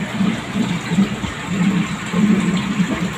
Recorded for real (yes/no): yes